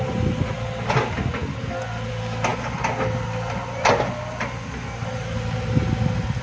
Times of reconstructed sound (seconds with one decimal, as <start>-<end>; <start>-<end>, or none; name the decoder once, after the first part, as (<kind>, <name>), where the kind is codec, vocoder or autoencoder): none